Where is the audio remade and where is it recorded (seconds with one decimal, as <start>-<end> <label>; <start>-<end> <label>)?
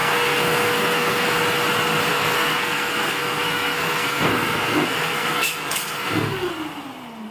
0.0-1.4 remade; 1.4-2.1 recorded; 2.1-6.5 remade; 6.5-7.3 recorded